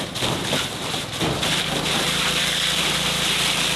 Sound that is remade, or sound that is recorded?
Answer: remade